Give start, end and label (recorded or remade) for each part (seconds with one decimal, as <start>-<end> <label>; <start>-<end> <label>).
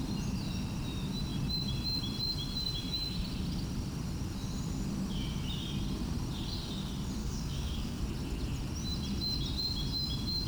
0.0-7.2 recorded; 7.2-8.0 remade; 8.0-10.5 recorded